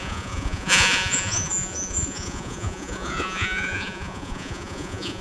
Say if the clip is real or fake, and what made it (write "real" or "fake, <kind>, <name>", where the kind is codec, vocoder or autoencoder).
fake, vocoder, Vocos